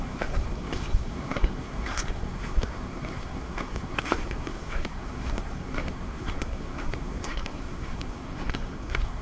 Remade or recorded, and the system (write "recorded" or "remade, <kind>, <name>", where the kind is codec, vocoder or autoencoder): remade, codec, SNAC